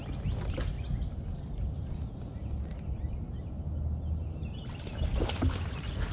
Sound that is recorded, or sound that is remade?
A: recorded